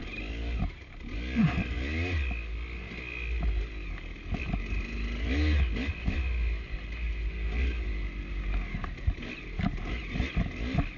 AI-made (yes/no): no